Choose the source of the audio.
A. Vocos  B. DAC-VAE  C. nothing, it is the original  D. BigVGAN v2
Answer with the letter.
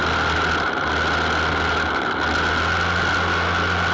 C